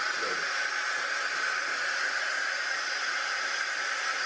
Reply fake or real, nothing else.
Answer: real